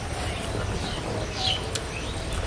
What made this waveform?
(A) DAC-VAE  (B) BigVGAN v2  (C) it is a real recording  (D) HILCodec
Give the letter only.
C